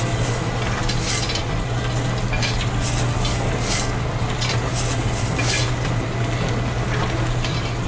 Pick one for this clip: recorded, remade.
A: recorded